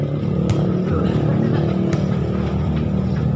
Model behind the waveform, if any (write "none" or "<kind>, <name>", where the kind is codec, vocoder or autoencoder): none